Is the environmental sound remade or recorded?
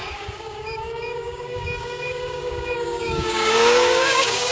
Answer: remade